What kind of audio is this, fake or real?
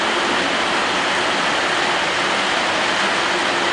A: real